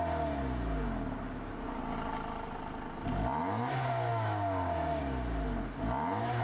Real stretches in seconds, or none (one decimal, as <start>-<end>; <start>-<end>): 0.0-4.1; 5.0-6.4